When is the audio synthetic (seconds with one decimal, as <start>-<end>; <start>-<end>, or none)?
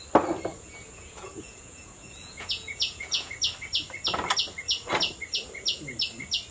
0.5-3.3